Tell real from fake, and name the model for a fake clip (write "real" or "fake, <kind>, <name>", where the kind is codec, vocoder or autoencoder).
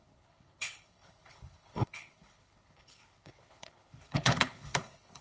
fake, codec, HILCodec